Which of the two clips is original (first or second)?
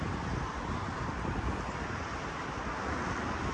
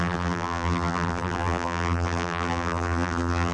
first